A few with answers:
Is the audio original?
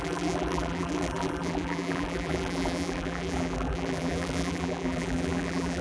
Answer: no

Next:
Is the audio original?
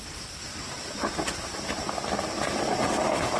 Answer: yes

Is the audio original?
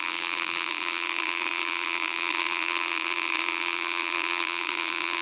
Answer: no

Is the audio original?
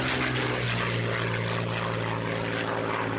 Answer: yes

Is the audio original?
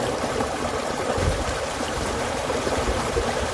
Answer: no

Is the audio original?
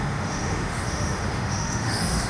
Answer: no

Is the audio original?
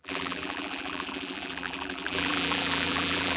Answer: no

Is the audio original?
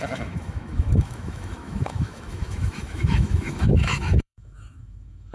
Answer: no